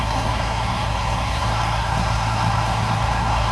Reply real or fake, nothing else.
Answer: fake